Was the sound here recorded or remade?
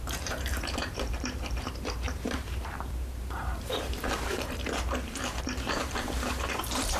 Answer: remade